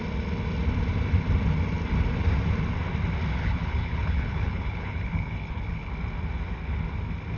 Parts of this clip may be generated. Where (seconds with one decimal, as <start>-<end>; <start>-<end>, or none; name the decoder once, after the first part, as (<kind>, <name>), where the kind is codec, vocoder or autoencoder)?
3.4-5.9 (codec, HILCodec)